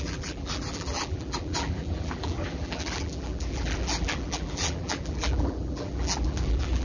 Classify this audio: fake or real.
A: fake